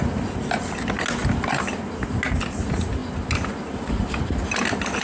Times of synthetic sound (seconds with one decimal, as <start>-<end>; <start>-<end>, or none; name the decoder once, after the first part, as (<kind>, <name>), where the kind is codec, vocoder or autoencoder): 1.2-1.8 (vocoder, BigVGAN v2)